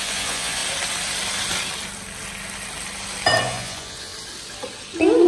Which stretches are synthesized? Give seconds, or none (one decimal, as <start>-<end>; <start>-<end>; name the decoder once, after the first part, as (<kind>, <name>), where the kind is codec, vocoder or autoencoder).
0.0-0.6 (vocoder, Vocos); 3.4-4.1

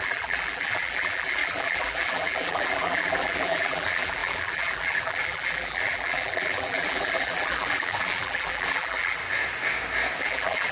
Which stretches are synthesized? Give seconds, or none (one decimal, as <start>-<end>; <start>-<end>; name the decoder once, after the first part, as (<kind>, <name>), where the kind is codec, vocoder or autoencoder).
0.0-9.2 (vocoder, BigVGAN v2); 10.2-10.7

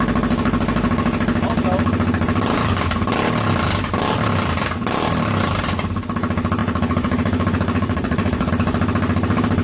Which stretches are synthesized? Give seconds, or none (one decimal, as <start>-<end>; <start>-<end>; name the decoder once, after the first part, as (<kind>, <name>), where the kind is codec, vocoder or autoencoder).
6.6-8.5 (vocoder, Vocos)

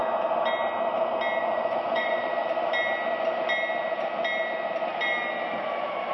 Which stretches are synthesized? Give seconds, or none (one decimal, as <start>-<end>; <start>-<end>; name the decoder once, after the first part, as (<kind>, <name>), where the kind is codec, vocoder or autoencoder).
1.4-2.4 (vocoder, Vocos)

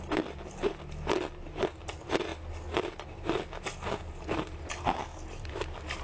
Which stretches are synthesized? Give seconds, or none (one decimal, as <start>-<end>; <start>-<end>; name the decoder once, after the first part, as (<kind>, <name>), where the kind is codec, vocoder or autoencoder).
none

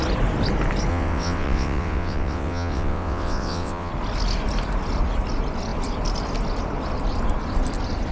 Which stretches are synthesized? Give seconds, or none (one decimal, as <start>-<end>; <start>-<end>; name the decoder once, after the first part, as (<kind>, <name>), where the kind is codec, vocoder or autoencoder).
0.9-3.9 (vocoder, WaveNeXt)